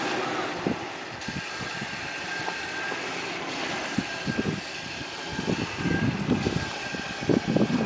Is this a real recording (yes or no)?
yes